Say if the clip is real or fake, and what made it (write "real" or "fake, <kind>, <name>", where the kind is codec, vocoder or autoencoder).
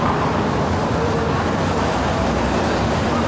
real